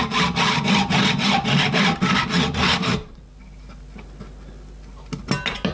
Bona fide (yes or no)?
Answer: yes